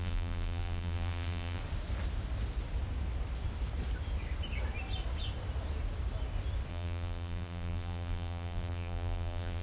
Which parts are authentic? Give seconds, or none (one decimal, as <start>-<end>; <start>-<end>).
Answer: 1.6-6.7